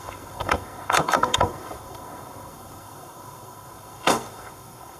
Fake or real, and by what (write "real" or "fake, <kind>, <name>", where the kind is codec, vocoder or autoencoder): fake, codec, SNAC